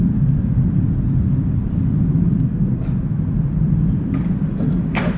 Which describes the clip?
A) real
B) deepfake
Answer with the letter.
B